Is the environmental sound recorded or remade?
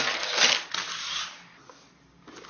recorded